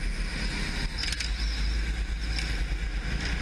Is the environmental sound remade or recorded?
recorded